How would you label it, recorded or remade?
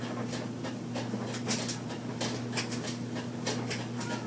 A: recorded